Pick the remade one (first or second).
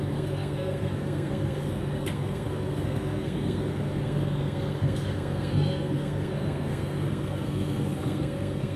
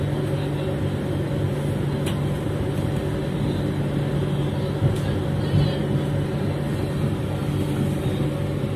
first